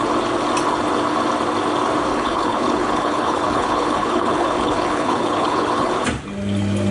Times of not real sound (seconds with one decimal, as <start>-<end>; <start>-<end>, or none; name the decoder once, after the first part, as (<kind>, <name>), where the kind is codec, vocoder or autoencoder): 2.1-5.9 (codec, HILCodec)